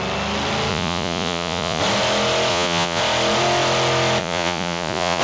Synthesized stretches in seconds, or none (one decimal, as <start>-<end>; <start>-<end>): 0.7-1.8; 2.5-3.0; 4.2-5.2